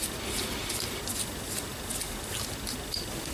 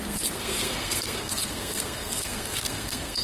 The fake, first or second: second